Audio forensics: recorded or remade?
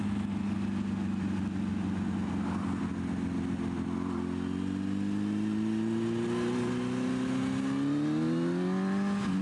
recorded